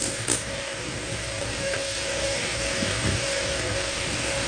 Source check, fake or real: fake